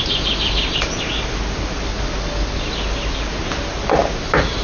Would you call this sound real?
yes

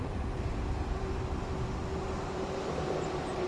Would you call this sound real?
yes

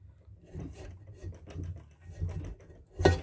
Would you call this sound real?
yes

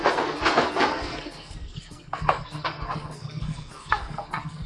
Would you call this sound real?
no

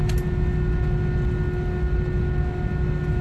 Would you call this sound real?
yes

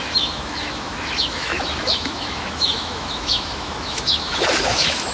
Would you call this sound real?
no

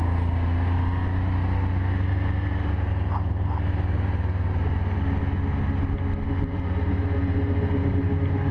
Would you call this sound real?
yes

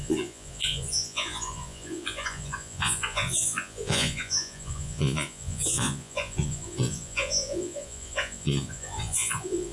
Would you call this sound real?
no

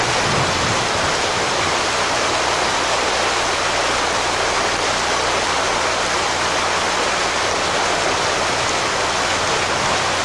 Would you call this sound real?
yes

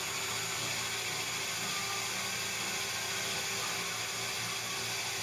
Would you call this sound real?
yes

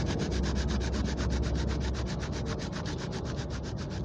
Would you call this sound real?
yes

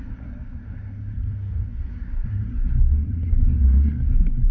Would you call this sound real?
no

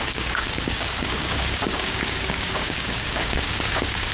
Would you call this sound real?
no